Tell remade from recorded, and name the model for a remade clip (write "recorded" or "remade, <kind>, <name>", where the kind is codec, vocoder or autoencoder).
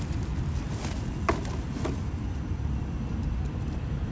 recorded